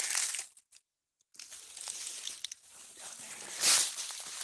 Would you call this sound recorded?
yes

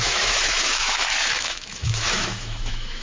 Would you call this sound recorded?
no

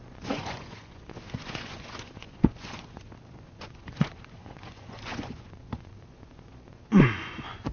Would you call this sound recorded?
no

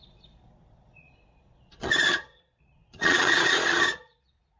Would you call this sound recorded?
no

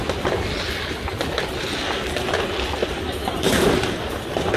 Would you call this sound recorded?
yes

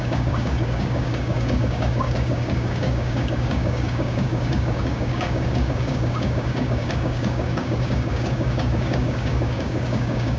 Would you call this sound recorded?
no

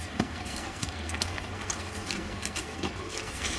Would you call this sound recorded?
no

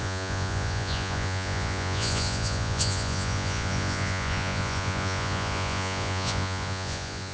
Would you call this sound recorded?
no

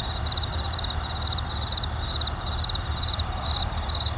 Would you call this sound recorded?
yes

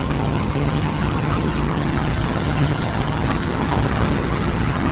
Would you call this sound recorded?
no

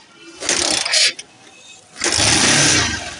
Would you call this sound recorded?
yes